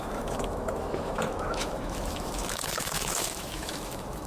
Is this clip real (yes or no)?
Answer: no